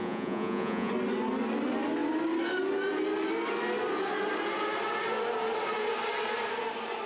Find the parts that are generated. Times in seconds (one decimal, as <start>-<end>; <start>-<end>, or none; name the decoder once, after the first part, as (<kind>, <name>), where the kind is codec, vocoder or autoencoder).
0.0-0.9 (vocoder, Vocos)